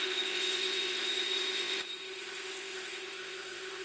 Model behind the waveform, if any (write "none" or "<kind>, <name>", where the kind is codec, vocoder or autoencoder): codec, ZipCodec